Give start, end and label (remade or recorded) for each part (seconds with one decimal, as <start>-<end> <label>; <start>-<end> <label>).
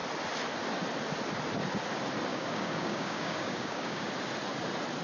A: 0.0-2.3 recorded; 2.3-4.1 remade; 4.1-5.0 recorded